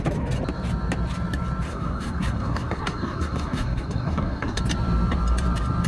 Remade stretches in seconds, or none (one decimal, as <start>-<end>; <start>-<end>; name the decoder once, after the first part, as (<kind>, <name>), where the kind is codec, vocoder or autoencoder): 1.7-4.6 (codec, SNAC)